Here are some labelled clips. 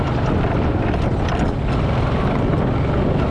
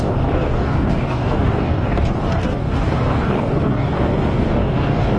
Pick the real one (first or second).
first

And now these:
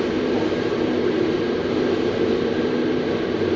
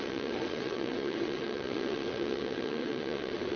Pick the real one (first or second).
first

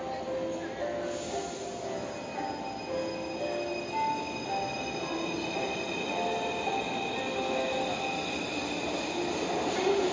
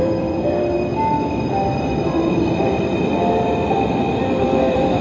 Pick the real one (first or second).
first